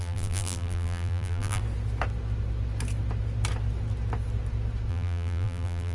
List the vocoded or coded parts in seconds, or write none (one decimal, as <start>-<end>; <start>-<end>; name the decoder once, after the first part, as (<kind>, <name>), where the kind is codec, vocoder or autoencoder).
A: 0.0-1.6 (vocoder, BigVGAN v2); 4.9-5.9